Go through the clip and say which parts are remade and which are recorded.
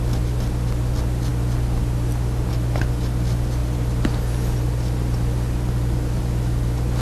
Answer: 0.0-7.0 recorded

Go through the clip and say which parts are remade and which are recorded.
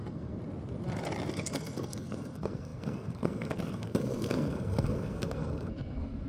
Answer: 0.0-0.4 remade; 0.4-1.3 recorded; 1.3-6.3 remade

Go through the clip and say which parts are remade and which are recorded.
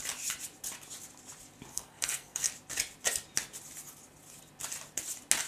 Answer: 0.0-1.7 recorded; 1.7-2.5 remade; 2.5-5.5 recorded